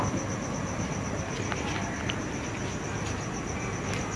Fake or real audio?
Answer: real